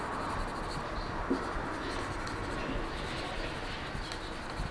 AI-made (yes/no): no